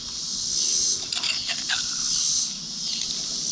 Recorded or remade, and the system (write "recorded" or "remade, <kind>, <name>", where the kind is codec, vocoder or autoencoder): recorded